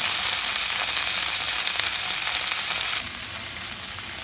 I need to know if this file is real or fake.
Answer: real